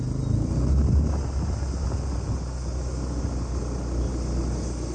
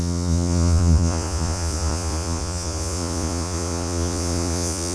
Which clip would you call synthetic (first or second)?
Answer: second